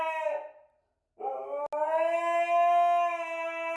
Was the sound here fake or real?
real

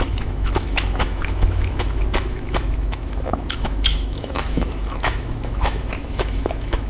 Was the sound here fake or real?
fake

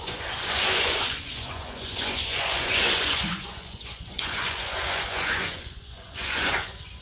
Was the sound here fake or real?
fake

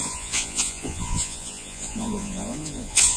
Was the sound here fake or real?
fake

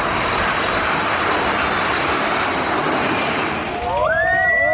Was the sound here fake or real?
real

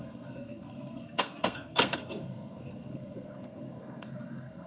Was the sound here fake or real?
fake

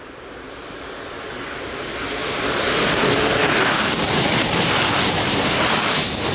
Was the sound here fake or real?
fake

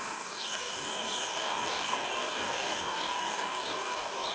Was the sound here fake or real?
fake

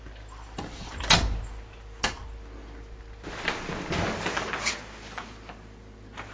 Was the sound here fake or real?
real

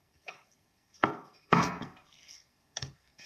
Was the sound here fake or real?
fake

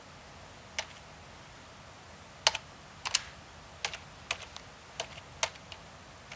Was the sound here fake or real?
real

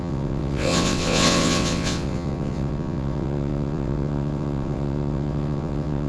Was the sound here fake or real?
fake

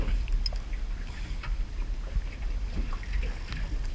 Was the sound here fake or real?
real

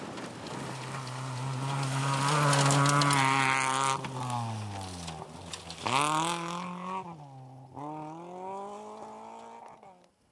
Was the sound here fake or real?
real